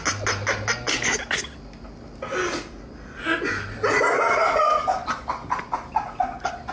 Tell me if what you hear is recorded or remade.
recorded